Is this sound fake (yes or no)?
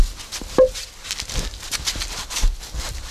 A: no